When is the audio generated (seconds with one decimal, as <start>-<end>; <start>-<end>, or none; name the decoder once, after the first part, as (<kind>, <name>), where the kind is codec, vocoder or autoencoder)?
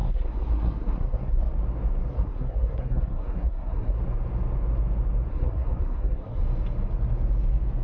0.0-1.4 (codec, SNAC); 2.1-4.0; 5.3-6.4